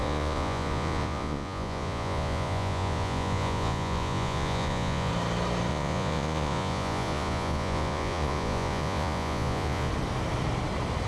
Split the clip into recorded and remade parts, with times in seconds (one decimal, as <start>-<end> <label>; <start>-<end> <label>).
0.0-5.1 remade; 5.1-5.7 recorded; 5.7-9.9 remade; 9.9-11.1 recorded